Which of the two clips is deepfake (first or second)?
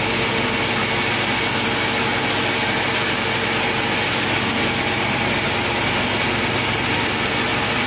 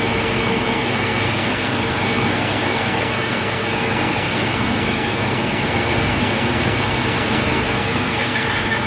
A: second